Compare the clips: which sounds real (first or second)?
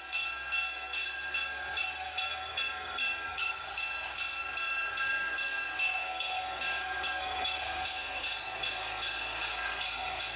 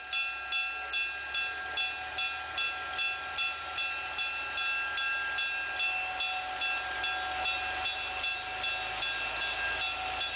second